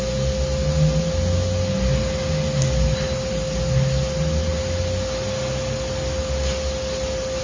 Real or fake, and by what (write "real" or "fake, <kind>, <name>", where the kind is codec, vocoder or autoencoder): real